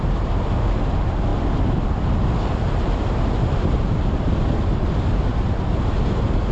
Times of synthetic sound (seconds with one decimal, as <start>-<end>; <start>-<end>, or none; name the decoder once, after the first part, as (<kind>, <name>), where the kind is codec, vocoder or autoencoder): none